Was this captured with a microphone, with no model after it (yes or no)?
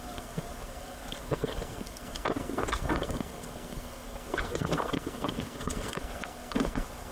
no